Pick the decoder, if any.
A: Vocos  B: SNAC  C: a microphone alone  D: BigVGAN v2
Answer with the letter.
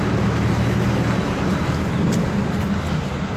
C